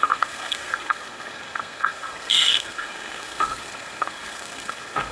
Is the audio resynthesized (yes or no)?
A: yes